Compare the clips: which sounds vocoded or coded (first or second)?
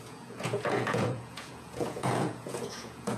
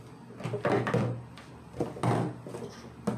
first